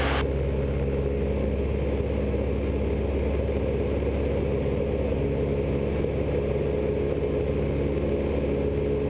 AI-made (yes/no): no